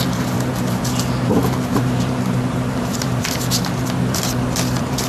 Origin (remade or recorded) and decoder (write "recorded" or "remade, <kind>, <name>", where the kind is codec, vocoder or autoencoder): remade, vocoder, BigVGAN v2